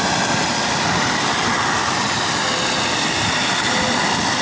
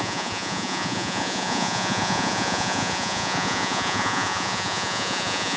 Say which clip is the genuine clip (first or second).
first